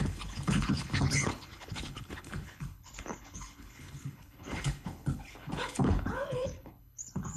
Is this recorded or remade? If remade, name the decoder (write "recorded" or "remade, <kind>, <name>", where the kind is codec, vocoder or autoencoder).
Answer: remade, codec, HILCodec